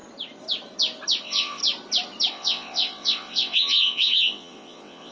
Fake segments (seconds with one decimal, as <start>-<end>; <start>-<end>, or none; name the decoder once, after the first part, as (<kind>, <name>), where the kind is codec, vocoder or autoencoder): 1.2-1.6 (vocoder, WaveNeXt); 2.3-5.1